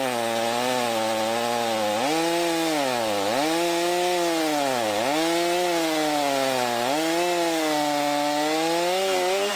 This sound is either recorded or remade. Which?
recorded